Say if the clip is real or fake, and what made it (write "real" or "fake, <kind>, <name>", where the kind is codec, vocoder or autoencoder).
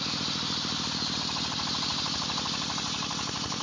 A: real